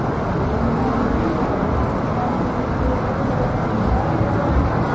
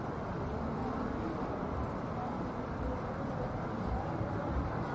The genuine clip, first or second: first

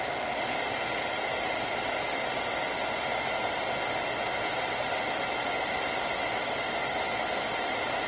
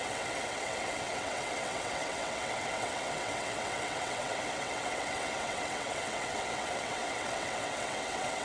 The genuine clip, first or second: first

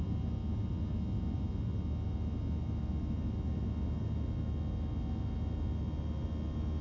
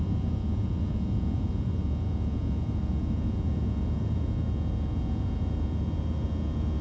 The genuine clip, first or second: first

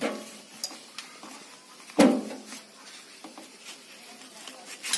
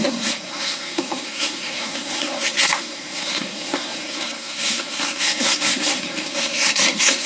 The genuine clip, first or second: first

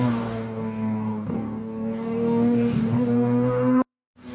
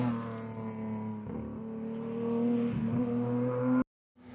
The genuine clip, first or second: second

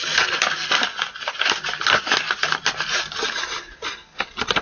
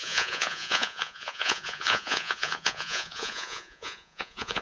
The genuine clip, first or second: first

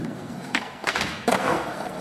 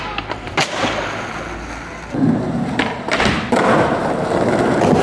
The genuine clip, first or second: second